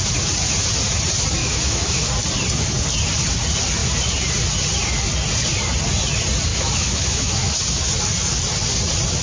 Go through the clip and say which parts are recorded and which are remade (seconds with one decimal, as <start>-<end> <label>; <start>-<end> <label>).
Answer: 0.0-1.4 recorded; 1.4-2.1 remade; 2.1-6.5 recorded; 6.5-7.5 remade; 7.5-9.2 recorded